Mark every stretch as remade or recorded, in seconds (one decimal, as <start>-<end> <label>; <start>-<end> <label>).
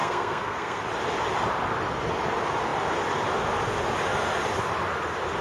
0.0-0.8 remade; 0.8-5.4 recorded